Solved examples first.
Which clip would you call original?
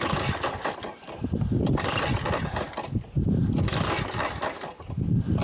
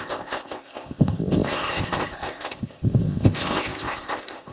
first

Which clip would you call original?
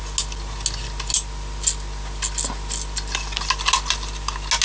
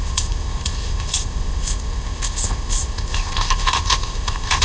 first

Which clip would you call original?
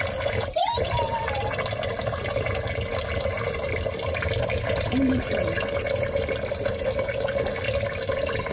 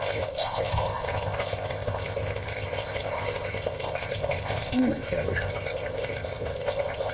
first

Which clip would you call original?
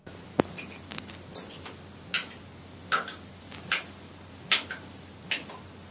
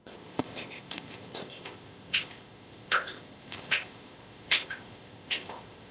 first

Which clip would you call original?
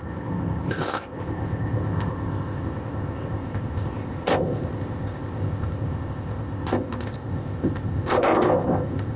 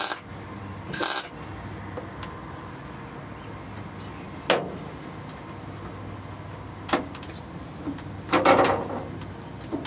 second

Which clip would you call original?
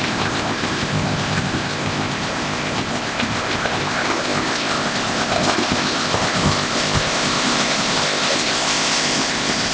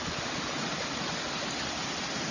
second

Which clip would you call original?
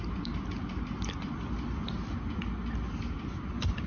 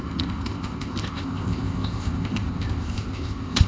first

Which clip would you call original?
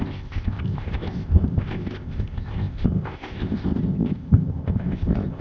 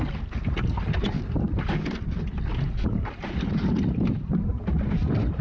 second